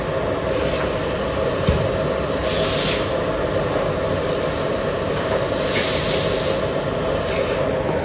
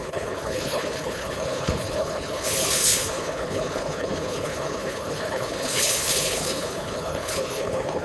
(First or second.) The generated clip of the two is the second